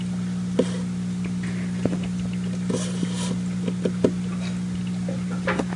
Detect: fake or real real